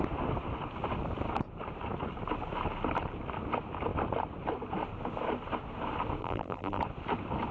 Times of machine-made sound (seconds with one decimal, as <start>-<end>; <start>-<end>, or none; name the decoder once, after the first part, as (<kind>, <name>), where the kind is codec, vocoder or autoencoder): 6.2-6.8 (vocoder, BigVGAN v2)